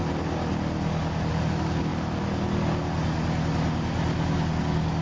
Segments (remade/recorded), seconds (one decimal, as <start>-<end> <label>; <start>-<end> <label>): 0.0-1.3 recorded; 1.3-1.9 remade; 1.9-4.6 recorded; 4.6-5.0 remade